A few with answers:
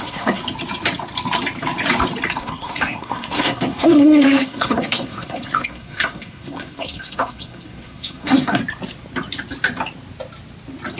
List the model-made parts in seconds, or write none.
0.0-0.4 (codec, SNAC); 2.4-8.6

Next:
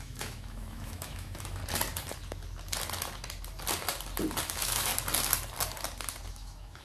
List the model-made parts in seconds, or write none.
0.0-1.6 (autoencoder, DAC-VAE); 4.4-4.9; 6.3-6.8